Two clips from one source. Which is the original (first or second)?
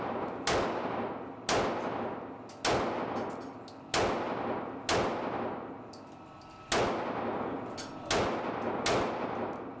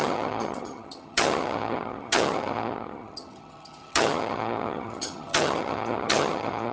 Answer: first